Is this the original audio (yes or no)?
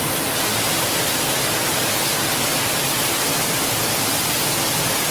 yes